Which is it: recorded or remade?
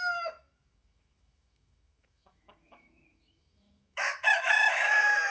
remade